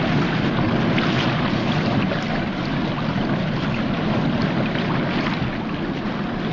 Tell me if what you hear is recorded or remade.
recorded